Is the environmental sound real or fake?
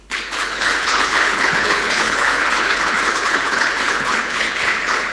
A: fake